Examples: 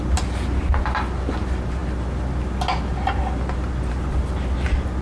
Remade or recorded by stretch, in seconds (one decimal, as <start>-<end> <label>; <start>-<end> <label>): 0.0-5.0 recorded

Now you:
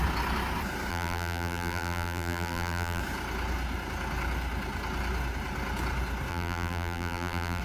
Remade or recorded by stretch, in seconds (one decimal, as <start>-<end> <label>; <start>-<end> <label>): 0.0-0.9 recorded; 0.9-3.0 remade; 3.0-6.3 recorded; 6.3-7.6 remade

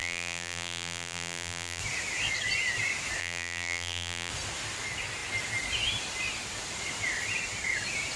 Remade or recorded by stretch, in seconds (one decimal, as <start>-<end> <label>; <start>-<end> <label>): 0.0-1.8 remade; 1.8-3.2 recorded; 3.2-4.3 remade; 4.3-8.2 recorded